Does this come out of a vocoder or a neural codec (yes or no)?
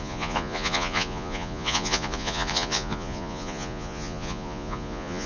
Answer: yes